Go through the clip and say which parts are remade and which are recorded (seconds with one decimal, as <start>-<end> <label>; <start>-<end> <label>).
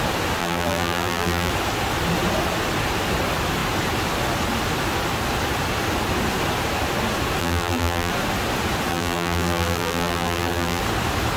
0.0-0.4 recorded; 0.4-1.5 remade; 1.5-7.4 recorded; 7.4-8.1 remade; 8.1-8.9 recorded; 8.9-10.8 remade; 10.8-11.4 recorded